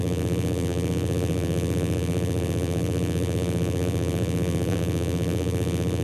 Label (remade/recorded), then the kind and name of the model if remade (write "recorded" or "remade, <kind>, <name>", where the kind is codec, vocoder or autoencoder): remade, vocoder, BigVGAN v2